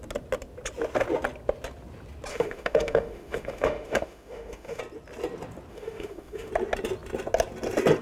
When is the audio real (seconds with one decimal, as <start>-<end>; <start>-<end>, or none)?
0.0-2.3; 4.8-5.7; 6.5-8.0